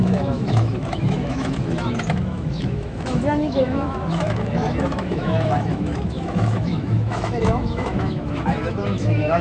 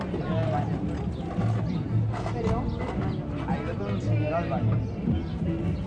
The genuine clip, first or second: second